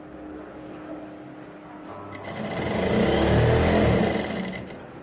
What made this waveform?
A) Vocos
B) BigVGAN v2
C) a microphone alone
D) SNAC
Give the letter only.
C